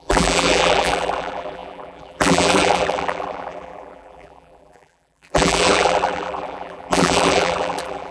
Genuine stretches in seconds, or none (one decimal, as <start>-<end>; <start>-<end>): none